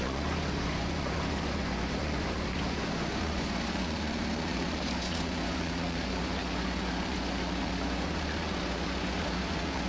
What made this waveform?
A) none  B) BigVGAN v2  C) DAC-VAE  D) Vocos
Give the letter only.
D